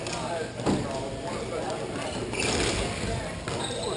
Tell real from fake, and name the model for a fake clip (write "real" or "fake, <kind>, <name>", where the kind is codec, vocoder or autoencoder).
real